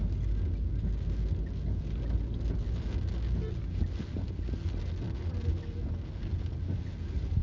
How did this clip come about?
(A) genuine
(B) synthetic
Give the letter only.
A